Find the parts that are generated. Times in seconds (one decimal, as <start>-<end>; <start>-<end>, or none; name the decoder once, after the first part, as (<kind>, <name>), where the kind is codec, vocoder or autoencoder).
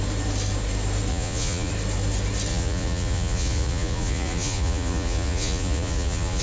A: 1.1-1.7 (vocoder, Vocos); 2.5-6.4